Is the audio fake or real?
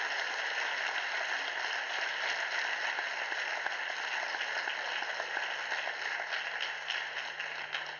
real